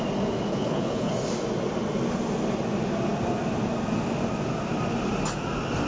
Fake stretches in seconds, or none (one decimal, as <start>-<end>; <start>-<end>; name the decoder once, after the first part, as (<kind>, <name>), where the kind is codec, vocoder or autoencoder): 0.5-1.1 (codec, HILCodec)